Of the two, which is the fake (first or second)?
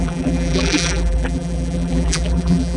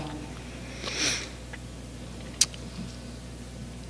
first